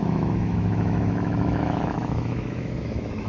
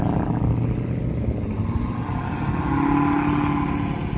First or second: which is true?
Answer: second